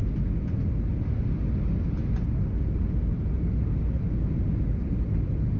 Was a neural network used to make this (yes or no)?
no